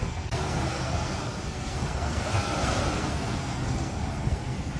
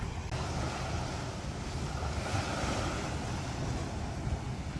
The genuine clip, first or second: second